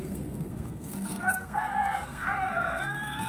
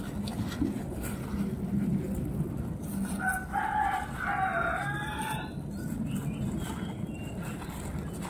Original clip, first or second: second